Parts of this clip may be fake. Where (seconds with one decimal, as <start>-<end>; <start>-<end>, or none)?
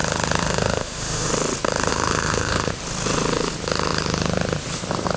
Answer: 0.4-1.3; 1.9-2.7